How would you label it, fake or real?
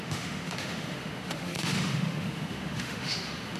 fake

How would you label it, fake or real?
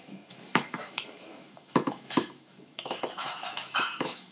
fake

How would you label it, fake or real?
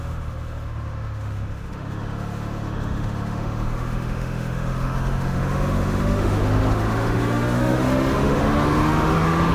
fake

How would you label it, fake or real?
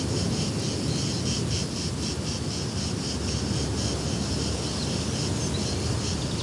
real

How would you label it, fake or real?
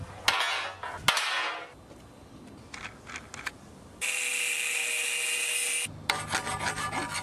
real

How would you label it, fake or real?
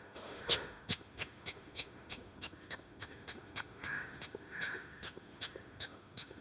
fake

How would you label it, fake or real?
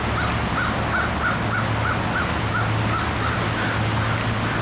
real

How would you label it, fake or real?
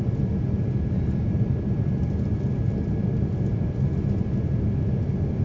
real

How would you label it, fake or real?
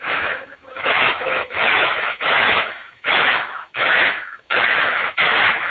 fake